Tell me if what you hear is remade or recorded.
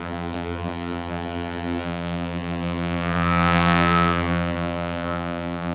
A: remade